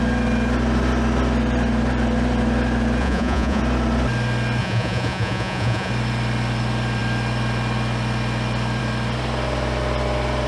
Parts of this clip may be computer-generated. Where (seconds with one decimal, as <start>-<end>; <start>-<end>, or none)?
3.0-3.6; 4.6-5.9